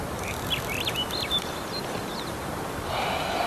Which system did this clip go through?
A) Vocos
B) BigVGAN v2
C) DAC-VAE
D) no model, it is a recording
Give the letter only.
D